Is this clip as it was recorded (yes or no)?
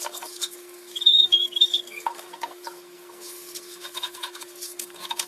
no